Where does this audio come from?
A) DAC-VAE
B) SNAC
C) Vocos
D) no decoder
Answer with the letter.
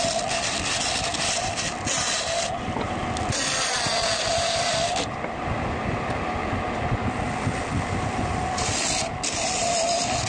D